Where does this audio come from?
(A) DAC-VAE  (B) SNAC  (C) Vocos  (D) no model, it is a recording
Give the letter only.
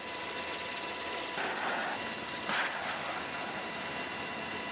D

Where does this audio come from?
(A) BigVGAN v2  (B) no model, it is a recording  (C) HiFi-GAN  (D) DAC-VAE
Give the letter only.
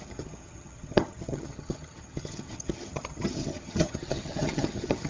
C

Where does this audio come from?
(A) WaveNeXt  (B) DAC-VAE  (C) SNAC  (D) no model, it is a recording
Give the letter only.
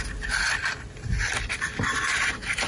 D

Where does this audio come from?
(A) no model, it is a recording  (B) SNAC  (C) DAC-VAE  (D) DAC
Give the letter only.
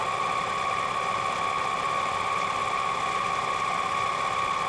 A